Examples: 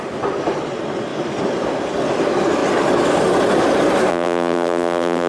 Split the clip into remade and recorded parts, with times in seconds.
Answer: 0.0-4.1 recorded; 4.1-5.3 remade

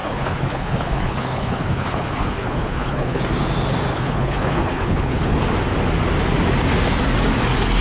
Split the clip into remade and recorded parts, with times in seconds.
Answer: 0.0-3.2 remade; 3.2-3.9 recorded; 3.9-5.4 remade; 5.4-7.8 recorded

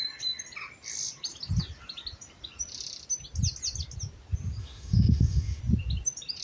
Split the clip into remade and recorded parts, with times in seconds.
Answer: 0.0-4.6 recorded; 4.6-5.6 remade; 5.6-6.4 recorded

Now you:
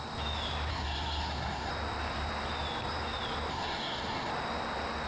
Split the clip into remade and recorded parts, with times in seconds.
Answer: 0.0-0.7 recorded; 0.7-1.7 remade; 1.7-3.5 recorded; 3.5-4.3 remade; 4.3-5.1 recorded